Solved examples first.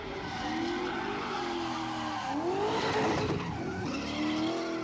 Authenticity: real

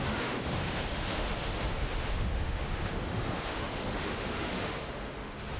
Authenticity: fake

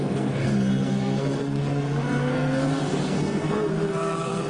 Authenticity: fake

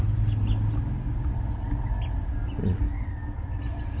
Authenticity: real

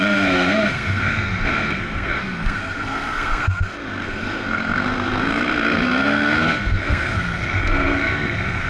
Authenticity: fake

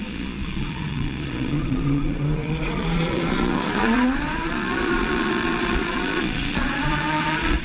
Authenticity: fake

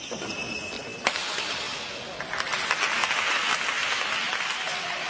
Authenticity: real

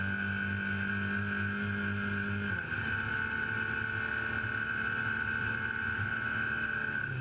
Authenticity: real